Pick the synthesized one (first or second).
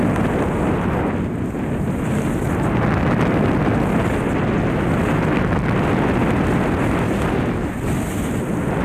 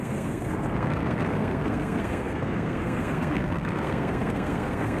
second